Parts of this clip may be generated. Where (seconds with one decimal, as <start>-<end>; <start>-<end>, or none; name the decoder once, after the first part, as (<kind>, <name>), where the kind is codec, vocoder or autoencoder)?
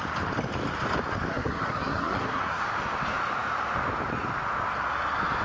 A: 1.3-2.6 (codec, SNAC)